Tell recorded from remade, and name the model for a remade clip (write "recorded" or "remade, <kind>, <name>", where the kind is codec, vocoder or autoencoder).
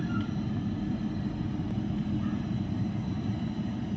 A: recorded